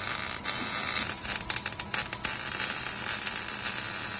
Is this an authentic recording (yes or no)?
no